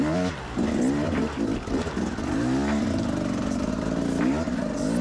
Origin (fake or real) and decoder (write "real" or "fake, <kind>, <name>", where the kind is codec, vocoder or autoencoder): real